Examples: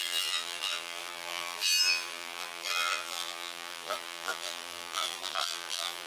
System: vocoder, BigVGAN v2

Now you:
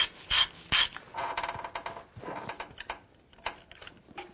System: none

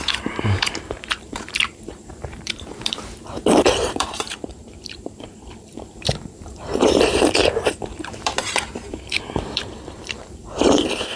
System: vocoder, BigVGAN v2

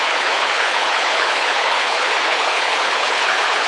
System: codec, HILCodec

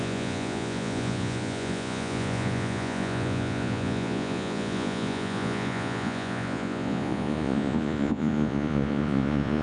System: vocoder, Vocos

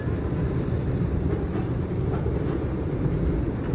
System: none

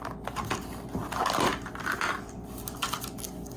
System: none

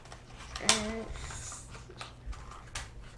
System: none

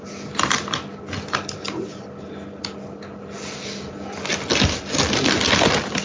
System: none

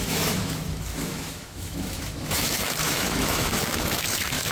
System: autoencoder, DAC-VAE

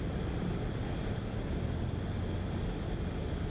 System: none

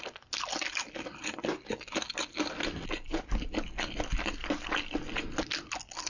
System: none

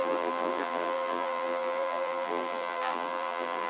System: vocoder, BigVGAN v2